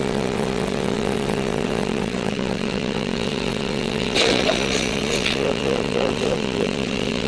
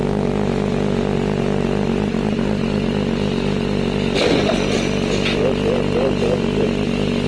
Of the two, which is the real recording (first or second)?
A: second